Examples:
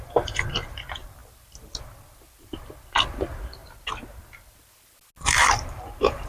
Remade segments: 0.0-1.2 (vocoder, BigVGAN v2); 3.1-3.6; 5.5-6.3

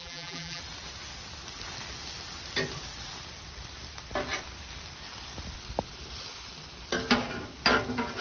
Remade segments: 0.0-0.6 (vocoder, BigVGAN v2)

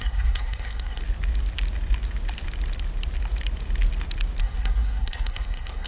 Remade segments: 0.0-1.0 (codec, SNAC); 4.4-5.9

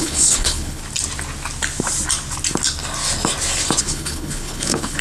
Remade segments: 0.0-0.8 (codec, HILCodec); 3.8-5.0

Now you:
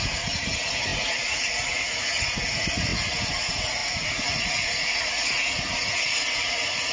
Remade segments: 0.0-6.9 (vocoder, Vocos)